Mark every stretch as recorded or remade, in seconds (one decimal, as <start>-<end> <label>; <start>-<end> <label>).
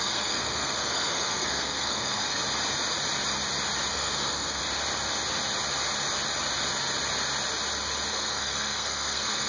0.0-2.4 remade; 2.4-3.9 recorded; 3.9-4.6 remade; 4.6-8.1 recorded; 8.1-9.5 remade